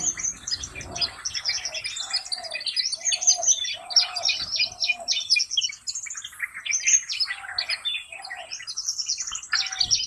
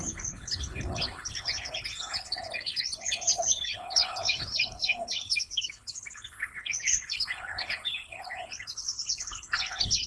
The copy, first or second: second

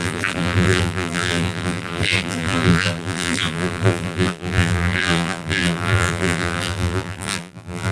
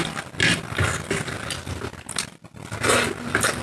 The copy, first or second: first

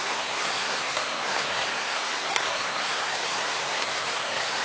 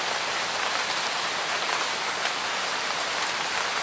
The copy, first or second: first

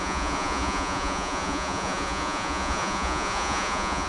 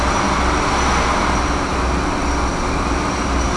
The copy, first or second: first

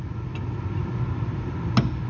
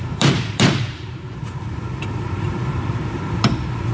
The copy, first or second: second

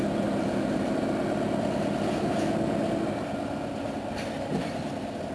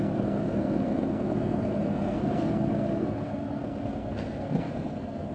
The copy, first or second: second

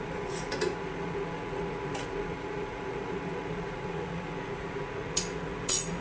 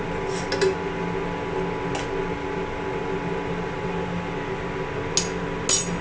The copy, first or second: first